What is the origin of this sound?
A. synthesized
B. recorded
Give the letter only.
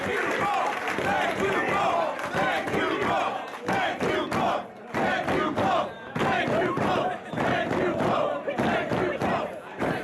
B